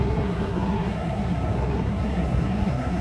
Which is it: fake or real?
fake